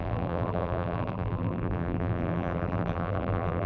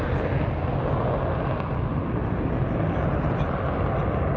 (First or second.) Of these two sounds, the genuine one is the second